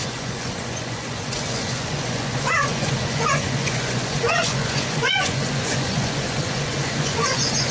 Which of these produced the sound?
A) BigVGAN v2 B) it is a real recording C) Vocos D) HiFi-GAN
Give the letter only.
C